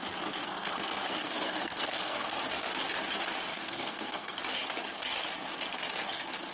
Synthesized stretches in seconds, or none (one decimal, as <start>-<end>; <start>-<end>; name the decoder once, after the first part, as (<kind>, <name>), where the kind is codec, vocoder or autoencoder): 0.4-2.4 (codec, SNAC); 3.5-4.4